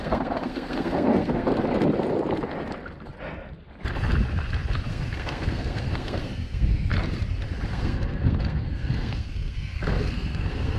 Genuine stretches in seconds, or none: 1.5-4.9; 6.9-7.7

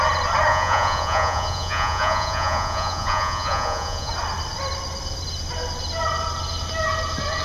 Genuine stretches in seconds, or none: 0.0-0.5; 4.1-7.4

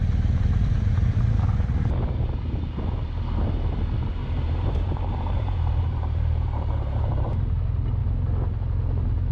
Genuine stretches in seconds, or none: 1.9-4.2; 7.6-9.3

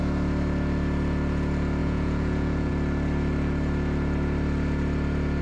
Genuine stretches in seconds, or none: 0.0-1.8; 2.7-5.4

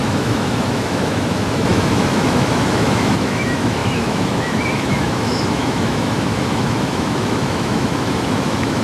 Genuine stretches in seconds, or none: none

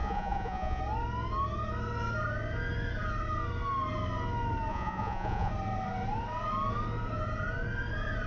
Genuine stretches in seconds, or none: 0.8-4.7; 5.5-8.3

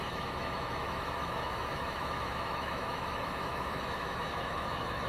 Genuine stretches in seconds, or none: none